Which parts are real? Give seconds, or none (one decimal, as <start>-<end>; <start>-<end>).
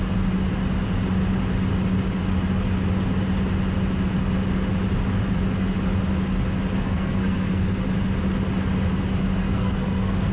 0.0-6.8; 7.8-9.4